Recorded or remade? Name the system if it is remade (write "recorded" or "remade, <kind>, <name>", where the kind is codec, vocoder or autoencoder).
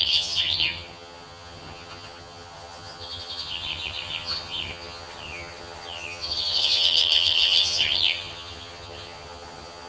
remade, vocoder, HiFi-GAN